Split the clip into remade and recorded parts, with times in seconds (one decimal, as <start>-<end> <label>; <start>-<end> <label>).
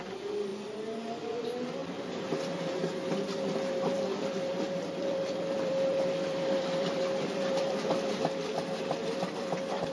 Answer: 0.0-9.9 remade